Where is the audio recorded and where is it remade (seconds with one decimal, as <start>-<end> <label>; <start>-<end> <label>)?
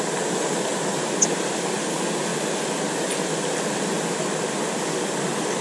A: 0.0-5.6 recorded